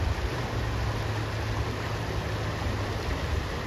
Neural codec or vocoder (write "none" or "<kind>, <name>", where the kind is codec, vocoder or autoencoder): none